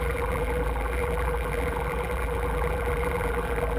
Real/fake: fake